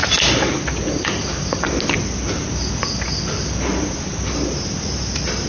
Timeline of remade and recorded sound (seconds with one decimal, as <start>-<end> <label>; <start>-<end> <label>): 0.0-5.5 recorded